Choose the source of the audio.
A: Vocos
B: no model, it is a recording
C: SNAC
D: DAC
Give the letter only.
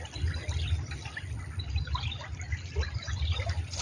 B